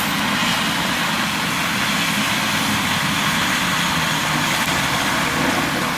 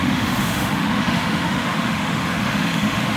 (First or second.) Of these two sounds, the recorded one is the first